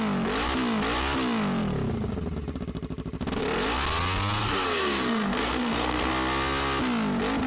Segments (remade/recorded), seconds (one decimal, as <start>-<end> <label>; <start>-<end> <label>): 0.0-4.4 recorded; 4.4-6.1 remade; 6.1-7.5 recorded

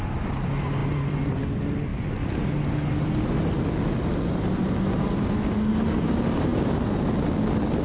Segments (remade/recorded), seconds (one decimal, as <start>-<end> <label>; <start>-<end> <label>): 0.0-7.8 recorded

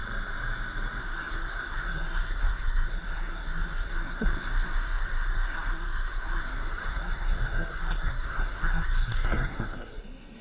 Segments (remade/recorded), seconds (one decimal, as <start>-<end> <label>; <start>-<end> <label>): 0.0-1.0 recorded; 1.0-10.4 remade

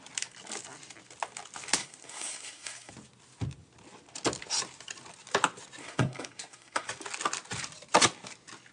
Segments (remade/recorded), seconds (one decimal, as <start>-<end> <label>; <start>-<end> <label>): 0.0-1.8 recorded; 1.8-2.9 remade; 2.9-5.8 recorded; 5.8-6.9 remade; 6.9-8.7 recorded

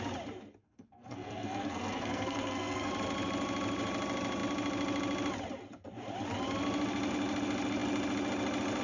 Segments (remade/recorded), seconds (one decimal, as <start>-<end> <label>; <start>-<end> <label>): 0.0-0.6 recorded; 0.6-2.9 remade; 2.9-8.8 recorded

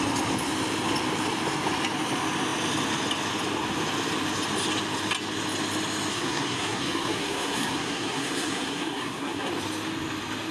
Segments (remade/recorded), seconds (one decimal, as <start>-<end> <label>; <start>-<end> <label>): 0.0-6.1 recorded; 6.1-9.5 remade; 9.5-10.5 recorded